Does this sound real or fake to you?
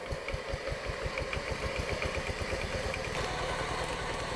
real